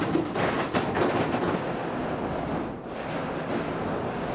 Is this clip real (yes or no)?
yes